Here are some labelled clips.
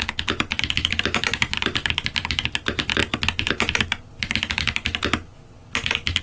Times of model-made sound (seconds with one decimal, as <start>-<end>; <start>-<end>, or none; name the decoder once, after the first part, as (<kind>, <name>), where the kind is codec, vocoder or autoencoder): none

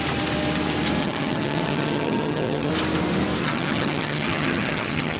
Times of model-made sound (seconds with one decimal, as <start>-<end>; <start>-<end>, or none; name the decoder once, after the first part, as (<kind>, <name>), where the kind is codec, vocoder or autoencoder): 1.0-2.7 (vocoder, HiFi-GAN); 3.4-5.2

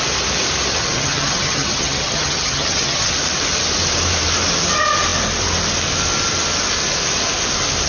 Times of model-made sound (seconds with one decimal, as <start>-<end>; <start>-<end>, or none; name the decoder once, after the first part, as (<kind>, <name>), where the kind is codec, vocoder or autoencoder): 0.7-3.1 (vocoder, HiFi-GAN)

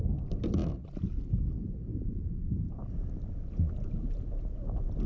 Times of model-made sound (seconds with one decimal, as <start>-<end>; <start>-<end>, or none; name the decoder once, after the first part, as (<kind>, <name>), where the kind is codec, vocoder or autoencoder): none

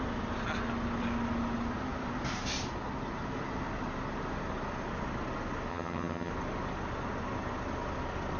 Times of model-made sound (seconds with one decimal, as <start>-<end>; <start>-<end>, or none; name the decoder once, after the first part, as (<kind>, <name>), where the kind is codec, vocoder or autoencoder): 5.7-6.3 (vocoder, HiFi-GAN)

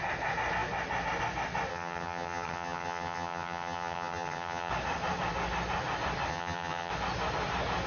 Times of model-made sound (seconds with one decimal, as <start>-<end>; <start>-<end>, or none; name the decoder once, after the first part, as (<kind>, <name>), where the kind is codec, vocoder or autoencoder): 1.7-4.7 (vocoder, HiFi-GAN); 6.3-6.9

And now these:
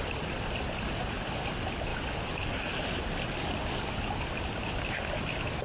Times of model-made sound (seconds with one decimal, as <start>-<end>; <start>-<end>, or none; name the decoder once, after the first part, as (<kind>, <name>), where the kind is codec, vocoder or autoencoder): none

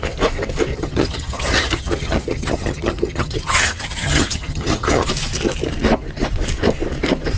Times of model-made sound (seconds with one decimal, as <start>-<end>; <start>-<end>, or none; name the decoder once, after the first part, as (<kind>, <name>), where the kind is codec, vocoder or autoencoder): 0.7-5.1 (vocoder, HiFi-GAN)